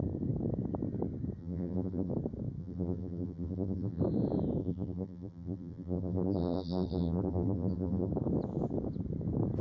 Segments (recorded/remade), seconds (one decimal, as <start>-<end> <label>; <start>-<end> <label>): 0.0-1.4 recorded; 1.4-2.1 remade; 2.1-2.6 recorded; 2.6-4.0 remade; 4.0-4.6 recorded; 4.6-8.1 remade; 8.1-9.6 recorded